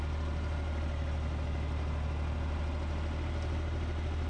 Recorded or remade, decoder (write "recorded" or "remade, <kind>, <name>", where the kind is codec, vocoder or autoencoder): recorded